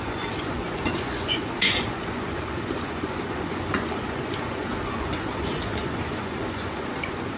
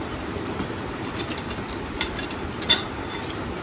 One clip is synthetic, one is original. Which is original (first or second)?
second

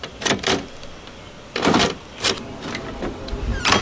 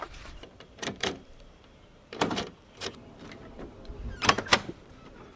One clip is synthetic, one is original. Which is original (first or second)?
first